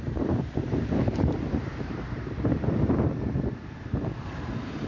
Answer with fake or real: fake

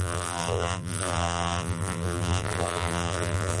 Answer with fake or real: fake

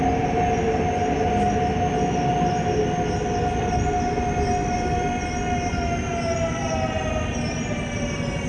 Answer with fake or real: real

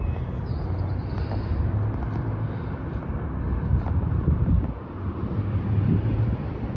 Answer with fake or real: fake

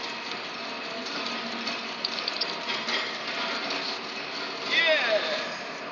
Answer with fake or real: real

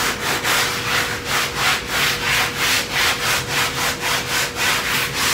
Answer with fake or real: real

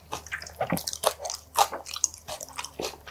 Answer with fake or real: fake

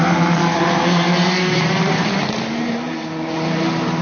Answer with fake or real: fake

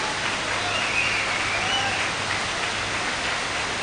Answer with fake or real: real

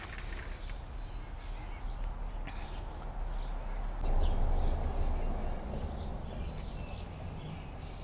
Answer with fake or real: real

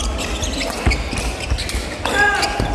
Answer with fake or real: real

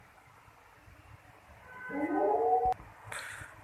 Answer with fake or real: real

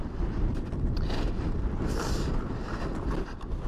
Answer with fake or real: real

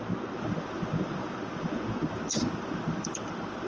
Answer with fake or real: fake